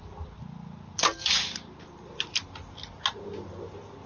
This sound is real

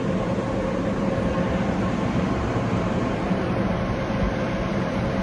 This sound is fake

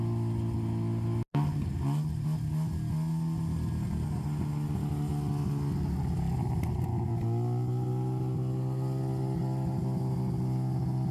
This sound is real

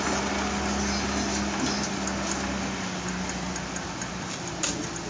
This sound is real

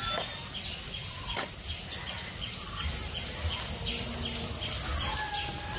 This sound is real